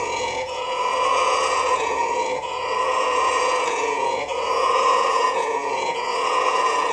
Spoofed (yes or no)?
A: yes